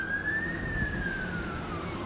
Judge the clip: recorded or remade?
remade